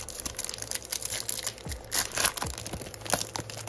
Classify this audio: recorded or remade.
recorded